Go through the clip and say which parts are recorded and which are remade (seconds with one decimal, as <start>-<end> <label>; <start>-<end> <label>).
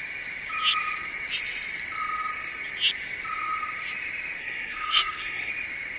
0.0-4.4 recorded; 4.4-5.5 remade; 5.5-6.0 recorded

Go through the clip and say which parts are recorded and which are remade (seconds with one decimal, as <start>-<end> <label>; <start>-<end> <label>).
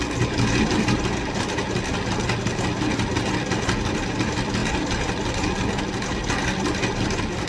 0.0-7.5 recorded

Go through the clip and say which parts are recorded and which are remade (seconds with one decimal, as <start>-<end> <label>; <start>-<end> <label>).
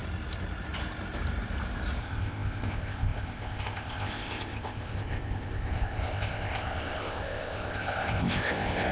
0.0-2.0 recorded; 2.0-8.9 remade